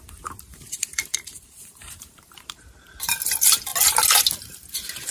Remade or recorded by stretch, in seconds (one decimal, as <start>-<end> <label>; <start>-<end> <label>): 0.0-0.5 recorded; 0.5-3.1 remade; 3.1-5.1 recorded